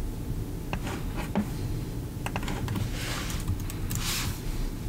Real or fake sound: real